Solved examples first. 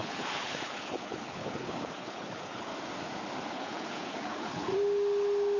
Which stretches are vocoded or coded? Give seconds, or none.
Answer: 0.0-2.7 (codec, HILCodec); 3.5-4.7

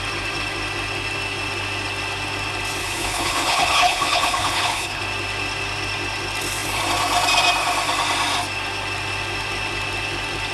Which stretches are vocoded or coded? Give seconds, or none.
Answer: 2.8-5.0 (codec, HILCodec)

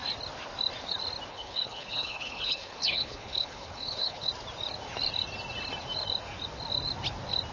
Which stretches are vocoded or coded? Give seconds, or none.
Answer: 1.3-4.3 (codec, HILCodec)

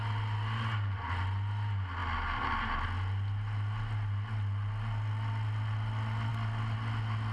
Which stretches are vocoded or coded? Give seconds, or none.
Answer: none